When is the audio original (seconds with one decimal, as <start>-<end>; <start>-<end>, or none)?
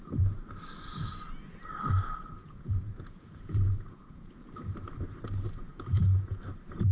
0.0-2.4; 4.3-5.7; 6.4-6.9